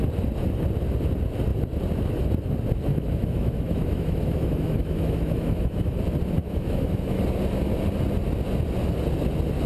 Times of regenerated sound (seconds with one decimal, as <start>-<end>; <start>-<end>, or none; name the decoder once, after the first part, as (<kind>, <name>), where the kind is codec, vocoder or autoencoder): 2.9-6.0 (autoencoder, DAC-VAE); 6.4-7.2